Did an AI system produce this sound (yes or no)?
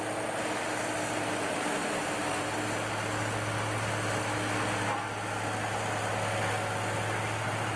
no